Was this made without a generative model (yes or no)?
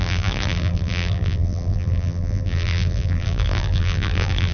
no